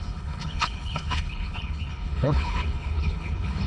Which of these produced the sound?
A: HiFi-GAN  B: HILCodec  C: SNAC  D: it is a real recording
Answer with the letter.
B